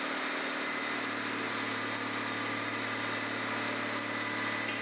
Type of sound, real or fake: real